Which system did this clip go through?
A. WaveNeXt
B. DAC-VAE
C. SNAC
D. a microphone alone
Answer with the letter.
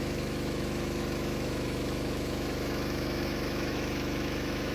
B